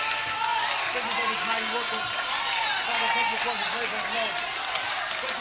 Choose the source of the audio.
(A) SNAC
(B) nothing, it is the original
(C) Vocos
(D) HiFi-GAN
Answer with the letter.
B